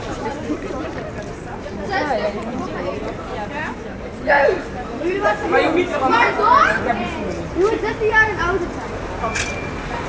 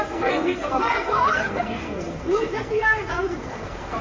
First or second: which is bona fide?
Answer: first